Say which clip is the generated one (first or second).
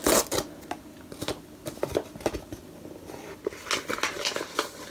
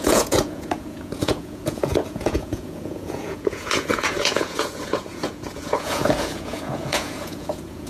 second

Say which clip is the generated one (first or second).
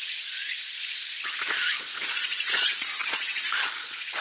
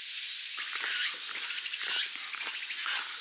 first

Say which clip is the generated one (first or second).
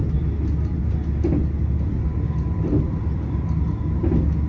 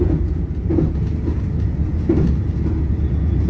second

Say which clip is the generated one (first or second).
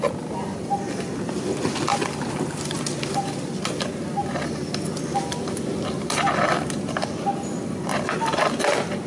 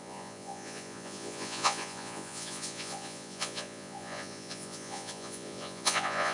second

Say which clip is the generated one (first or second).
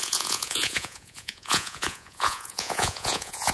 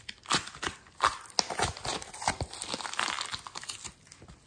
first